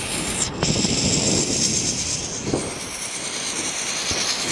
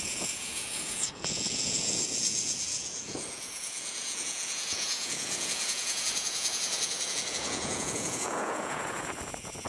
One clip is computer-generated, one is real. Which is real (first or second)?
first